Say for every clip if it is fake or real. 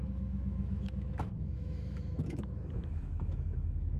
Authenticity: fake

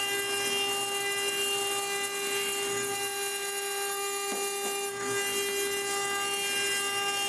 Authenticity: real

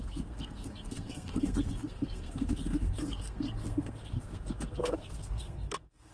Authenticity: fake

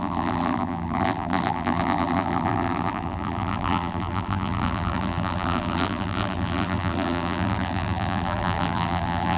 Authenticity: fake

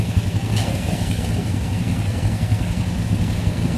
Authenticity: fake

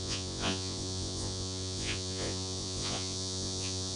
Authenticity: fake